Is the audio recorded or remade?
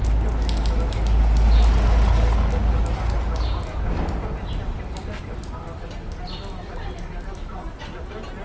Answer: recorded